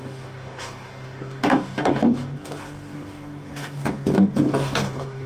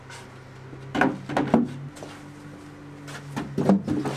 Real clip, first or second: second